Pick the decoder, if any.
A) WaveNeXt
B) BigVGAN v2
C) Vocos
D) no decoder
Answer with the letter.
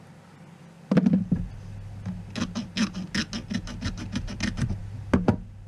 D